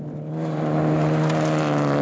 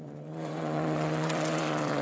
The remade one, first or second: second